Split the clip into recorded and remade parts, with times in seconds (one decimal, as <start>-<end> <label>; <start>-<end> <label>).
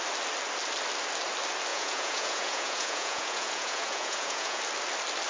0.0-1.7 recorded; 1.7-4.6 remade; 4.6-5.3 recorded